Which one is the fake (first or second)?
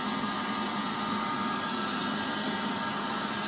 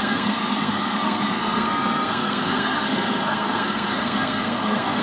second